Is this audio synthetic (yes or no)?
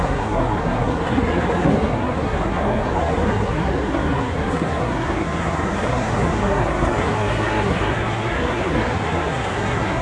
yes